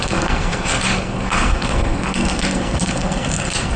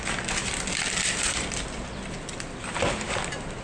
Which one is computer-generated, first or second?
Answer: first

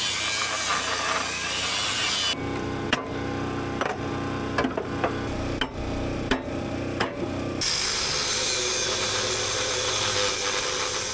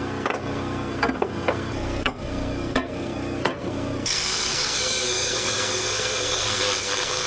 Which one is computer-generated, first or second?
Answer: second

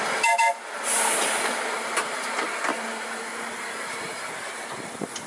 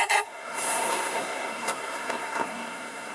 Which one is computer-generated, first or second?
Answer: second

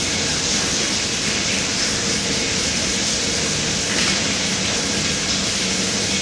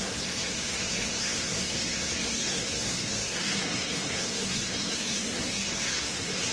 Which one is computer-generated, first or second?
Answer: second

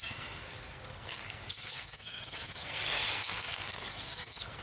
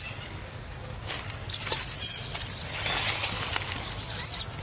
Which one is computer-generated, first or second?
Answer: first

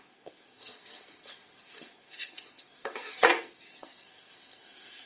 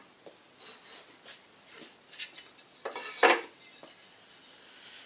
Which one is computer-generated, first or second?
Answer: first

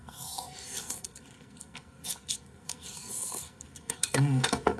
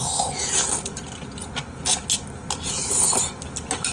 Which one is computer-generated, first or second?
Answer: first